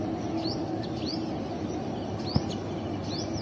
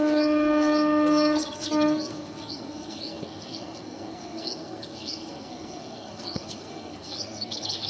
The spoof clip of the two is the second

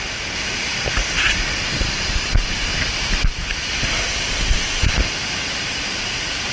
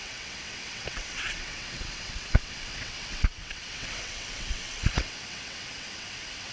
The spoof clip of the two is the second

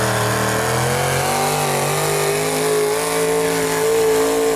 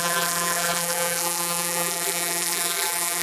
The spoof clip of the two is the second